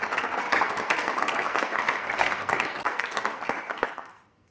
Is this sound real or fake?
fake